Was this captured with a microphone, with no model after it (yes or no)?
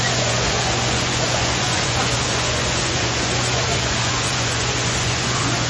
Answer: no